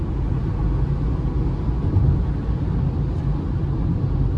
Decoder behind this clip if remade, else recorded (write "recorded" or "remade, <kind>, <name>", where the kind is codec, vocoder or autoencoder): recorded